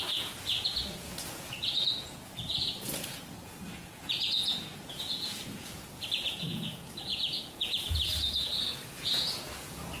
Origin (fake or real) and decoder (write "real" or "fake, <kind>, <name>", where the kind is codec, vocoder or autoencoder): fake, vocoder, Vocos